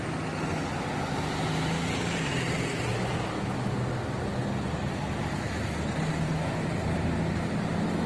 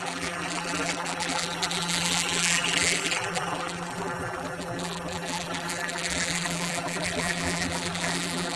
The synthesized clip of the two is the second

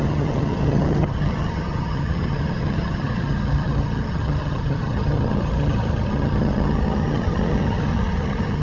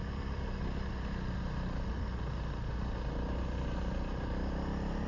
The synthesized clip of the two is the first